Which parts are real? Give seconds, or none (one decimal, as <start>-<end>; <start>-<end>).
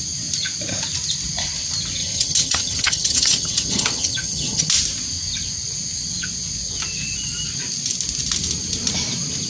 0.0-2.0; 4.7-9.5